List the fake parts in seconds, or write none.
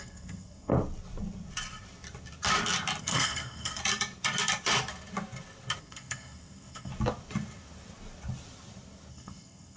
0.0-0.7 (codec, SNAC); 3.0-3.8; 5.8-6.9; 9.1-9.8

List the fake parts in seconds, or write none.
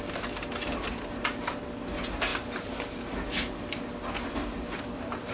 none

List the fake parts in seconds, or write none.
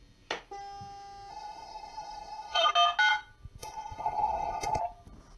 1.3-2.7 (codec, SNAC); 3.6-4.8